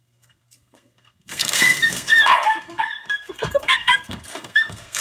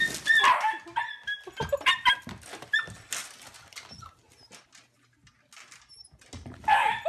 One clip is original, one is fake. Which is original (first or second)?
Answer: second